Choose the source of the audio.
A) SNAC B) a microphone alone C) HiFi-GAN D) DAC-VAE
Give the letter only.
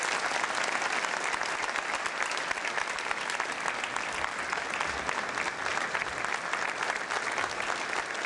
B